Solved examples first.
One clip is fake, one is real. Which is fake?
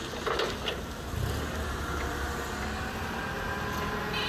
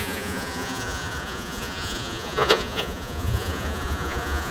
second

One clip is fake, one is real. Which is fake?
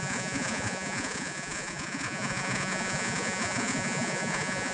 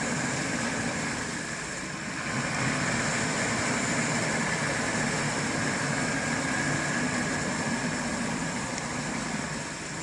first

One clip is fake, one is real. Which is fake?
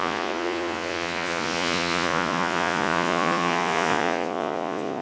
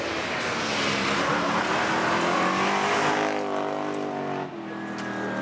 first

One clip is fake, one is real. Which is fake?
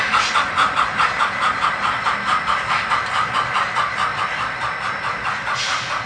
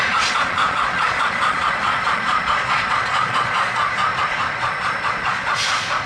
second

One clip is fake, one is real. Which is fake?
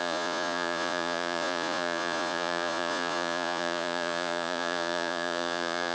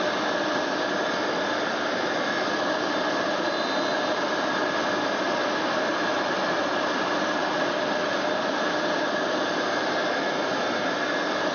first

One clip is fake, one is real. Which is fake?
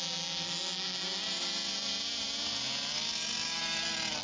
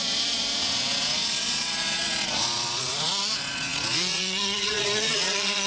second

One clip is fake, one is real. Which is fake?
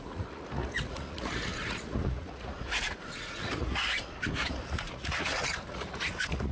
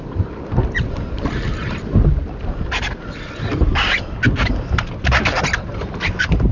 first